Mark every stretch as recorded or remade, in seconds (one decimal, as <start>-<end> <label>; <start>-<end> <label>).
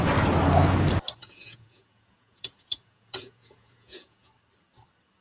0.0-1.2 recorded; 1.2-4.3 remade; 4.3-5.2 recorded